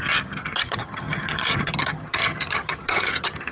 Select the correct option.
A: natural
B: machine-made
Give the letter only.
B